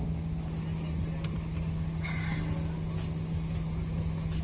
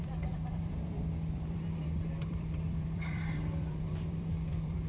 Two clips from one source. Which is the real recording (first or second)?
first